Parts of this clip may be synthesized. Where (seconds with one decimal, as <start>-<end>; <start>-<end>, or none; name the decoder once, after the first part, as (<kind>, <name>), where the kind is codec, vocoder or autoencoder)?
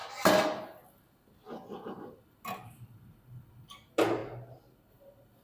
none